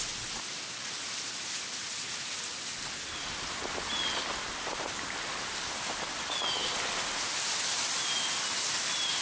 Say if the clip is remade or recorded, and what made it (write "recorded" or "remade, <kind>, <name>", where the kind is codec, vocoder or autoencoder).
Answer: recorded